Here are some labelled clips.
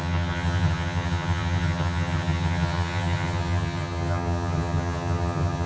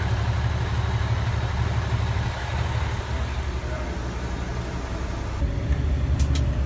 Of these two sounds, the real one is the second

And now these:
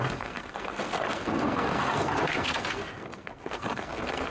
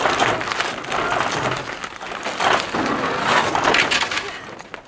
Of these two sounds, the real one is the second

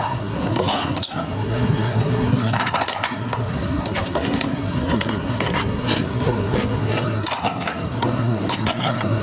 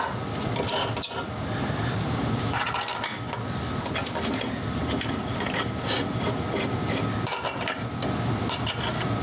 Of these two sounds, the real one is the second